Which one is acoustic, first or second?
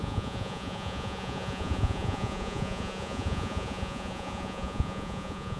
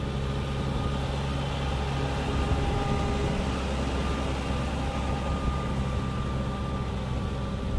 second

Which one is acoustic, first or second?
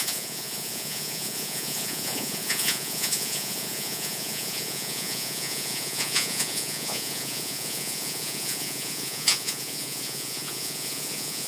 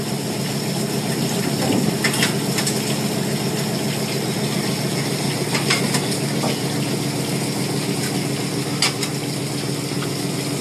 second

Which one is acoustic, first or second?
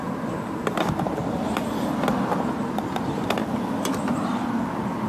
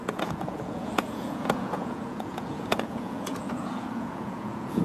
first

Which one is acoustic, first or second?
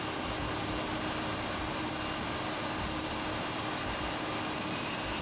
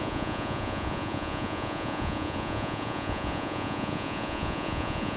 first